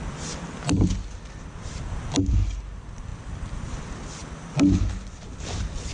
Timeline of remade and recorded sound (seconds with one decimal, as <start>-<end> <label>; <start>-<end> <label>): 0.0-3.1 recorded; 3.1-3.8 remade; 3.8-5.9 recorded